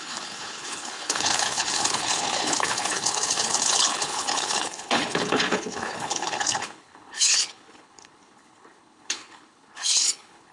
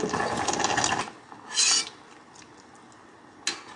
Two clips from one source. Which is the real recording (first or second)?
second